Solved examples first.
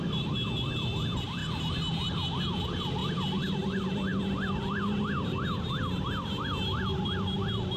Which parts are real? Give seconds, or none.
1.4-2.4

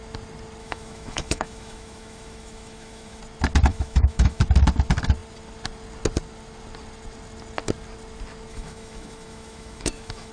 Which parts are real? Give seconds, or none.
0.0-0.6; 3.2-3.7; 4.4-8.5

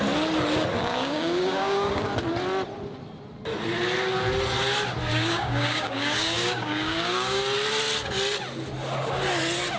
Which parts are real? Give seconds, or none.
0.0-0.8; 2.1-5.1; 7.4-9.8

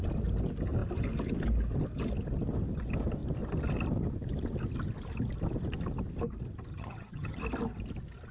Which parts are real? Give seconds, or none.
0.0-6.7; 7.4-8.3

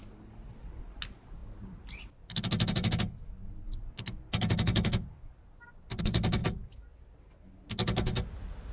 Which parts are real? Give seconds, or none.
0.0-8.7

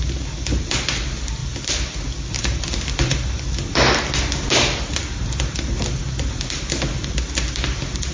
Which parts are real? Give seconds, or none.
0.0-8.1

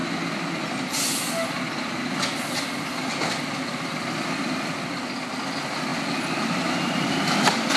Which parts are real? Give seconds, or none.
0.0-7.8

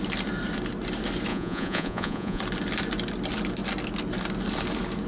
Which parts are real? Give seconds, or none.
0.0-1.3; 2.4-5.1